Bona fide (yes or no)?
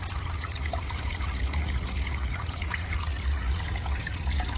no